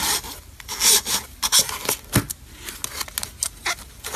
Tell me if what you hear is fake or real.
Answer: real